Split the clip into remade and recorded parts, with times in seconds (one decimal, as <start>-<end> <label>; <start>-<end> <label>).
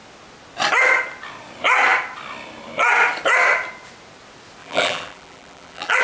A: 0.0-4.6 recorded; 4.6-6.0 remade